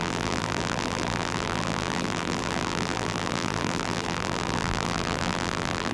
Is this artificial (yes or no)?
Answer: yes